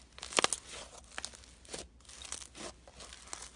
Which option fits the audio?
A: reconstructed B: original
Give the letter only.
B